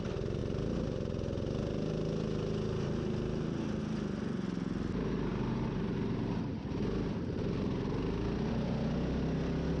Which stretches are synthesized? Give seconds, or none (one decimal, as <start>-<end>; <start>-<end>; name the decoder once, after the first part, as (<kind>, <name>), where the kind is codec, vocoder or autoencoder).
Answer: none